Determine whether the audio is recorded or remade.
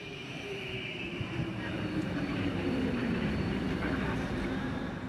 remade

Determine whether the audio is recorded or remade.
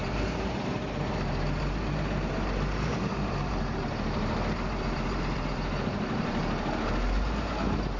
remade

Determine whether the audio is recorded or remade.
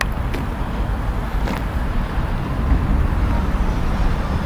recorded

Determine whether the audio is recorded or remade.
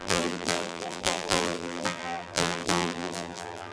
remade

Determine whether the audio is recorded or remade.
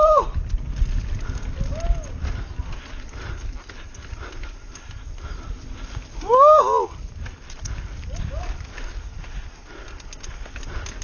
recorded